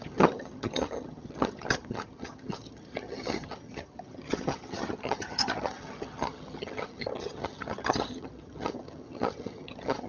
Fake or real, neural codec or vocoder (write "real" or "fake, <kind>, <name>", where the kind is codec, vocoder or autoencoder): fake, vocoder, HiFi-GAN